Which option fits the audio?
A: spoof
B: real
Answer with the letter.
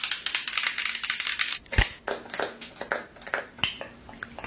B